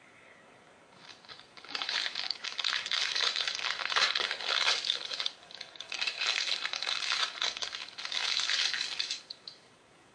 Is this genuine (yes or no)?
no